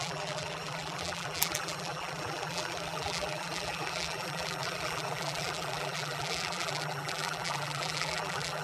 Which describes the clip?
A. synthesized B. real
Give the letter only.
A